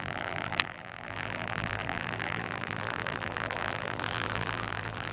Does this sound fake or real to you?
fake